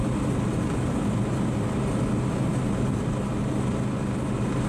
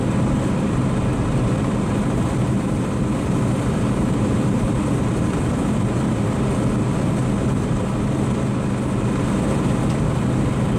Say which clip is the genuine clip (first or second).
first